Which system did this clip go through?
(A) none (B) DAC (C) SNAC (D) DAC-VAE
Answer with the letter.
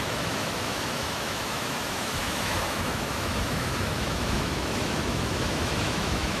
D